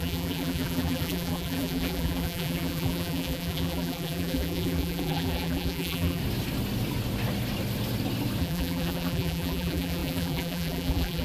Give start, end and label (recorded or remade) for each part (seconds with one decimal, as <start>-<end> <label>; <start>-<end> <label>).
0.0-6.2 remade; 6.2-8.4 recorded; 8.4-11.2 remade